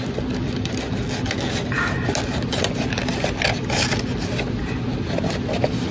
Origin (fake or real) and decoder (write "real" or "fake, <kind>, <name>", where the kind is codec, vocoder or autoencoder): real